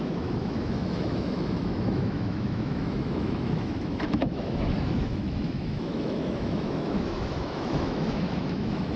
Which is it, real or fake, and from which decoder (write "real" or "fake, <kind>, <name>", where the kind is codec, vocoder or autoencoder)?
fake, autoencoder, DAC-VAE